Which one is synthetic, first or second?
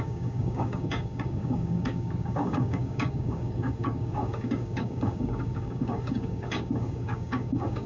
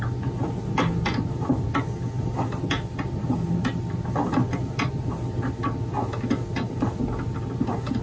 first